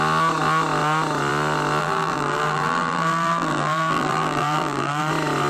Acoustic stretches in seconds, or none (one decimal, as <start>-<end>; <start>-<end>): 0.0-1.8; 5.1-5.5